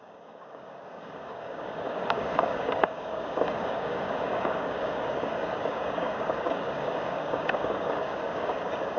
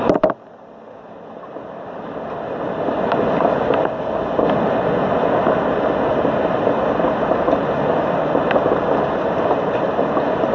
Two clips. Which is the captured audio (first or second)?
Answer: second